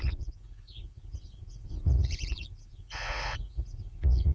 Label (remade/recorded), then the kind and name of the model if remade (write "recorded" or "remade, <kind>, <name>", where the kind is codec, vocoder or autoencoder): remade, vocoder, Vocos